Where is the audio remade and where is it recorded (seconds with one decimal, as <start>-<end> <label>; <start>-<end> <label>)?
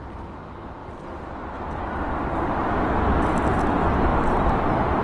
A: 0.0-4.1 recorded; 4.1-5.0 remade